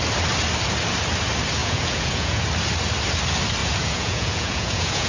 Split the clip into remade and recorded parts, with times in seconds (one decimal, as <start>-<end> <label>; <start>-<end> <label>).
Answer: 0.0-1.6 recorded; 1.6-2.4 remade; 2.4-3.6 recorded; 3.6-5.1 remade

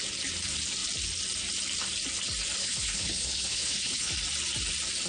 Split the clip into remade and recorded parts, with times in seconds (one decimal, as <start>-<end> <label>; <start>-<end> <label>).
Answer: 0.0-2.6 recorded; 2.6-4.1 remade; 4.1-5.1 recorded

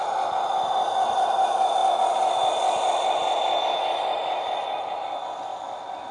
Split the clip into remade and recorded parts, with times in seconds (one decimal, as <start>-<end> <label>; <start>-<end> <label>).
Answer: 0.0-6.1 recorded

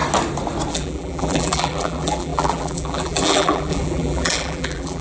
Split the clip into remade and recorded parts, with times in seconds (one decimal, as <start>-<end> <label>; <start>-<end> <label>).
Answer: 0.0-0.7 recorded; 0.7-5.0 remade

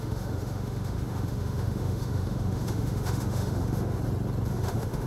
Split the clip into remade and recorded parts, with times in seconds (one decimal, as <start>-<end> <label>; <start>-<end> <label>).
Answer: 0.0-4.0 remade; 4.0-4.5 recorded; 4.5-5.1 remade

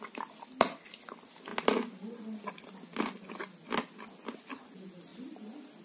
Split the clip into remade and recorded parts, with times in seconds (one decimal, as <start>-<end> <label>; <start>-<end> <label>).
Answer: 0.0-5.8 recorded

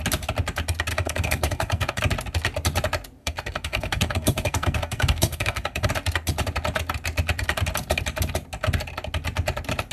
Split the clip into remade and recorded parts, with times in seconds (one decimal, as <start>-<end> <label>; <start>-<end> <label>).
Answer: 0.0-0.9 recorded; 0.9-2.0 remade; 2.0-3.2 recorded; 3.2-5.9 remade; 5.9-9.9 recorded